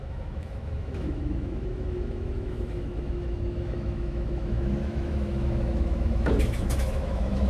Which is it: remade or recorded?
remade